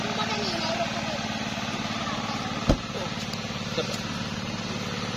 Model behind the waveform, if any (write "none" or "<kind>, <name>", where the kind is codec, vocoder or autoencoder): none